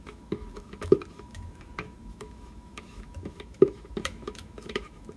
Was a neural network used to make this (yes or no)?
yes